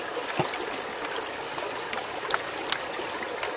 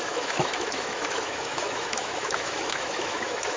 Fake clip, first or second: second